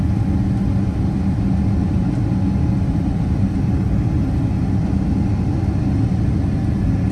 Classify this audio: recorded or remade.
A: recorded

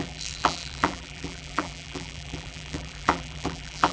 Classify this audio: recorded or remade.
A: remade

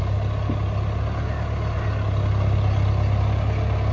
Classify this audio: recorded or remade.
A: recorded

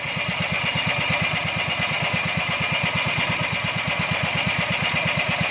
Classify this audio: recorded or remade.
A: recorded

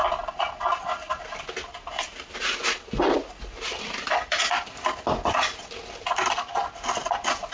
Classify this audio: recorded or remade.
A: recorded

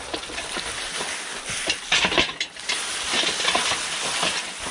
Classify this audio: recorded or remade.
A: recorded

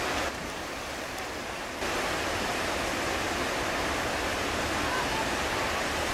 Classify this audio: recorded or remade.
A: recorded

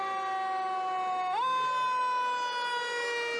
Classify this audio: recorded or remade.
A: recorded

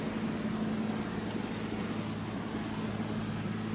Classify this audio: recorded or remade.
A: recorded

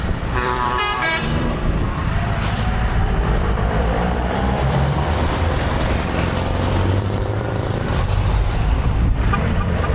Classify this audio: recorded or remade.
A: remade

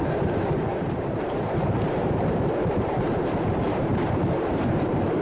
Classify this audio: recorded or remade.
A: remade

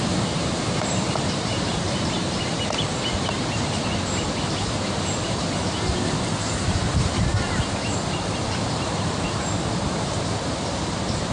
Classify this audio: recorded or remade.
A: remade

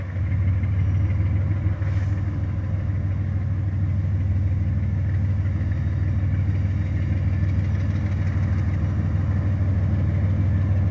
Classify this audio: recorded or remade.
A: recorded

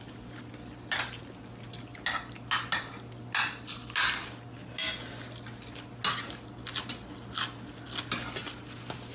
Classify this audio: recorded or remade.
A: recorded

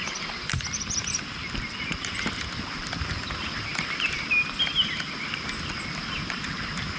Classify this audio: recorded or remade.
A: recorded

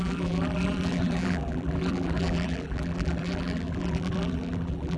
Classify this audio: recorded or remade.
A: remade